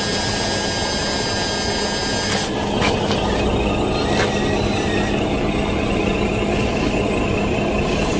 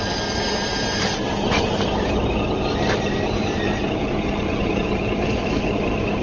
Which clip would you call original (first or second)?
first